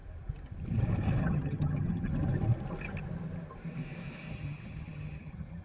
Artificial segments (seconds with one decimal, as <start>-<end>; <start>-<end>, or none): 1.2-2.1; 4.3-5.6